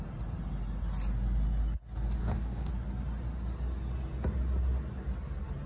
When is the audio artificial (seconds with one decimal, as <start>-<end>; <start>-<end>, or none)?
2.2-2.7